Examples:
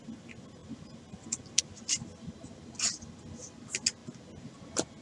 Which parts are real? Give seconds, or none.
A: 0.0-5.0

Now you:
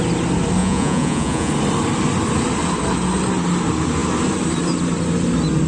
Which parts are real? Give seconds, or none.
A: 0.0-0.6; 1.5-5.7

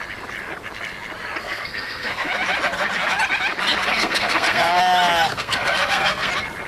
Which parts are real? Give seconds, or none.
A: 0.0-1.4; 2.3-3.9; 4.8-5.3; 6.3-6.7

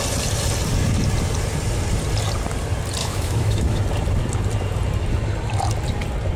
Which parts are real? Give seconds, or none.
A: 0.0-3.0; 3.8-6.4